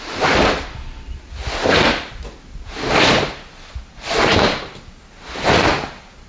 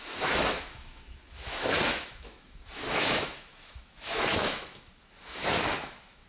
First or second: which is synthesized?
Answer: second